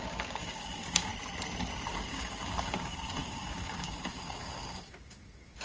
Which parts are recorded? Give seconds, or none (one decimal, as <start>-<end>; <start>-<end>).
1.1-1.9